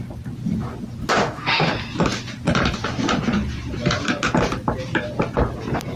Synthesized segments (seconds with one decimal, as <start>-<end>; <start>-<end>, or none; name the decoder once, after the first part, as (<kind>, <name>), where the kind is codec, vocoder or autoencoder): 1.2-1.7 (autoencoder, DAC-VAE)